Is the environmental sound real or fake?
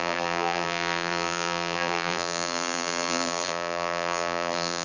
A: fake